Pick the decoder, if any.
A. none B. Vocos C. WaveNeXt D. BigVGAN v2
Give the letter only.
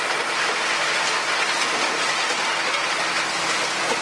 A